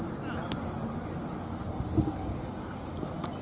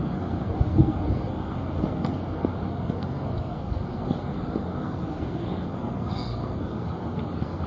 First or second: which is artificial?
second